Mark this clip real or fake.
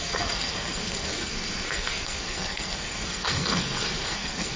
fake